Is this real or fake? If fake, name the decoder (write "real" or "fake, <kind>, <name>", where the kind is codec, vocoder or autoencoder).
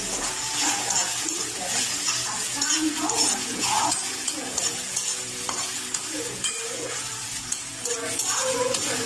fake, vocoder, Vocos